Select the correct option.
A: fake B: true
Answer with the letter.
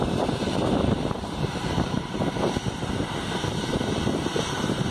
A